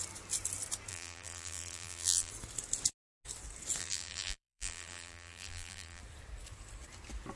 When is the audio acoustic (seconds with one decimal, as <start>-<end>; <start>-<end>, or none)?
0.0-0.9; 2.3-3.8; 6.0-7.4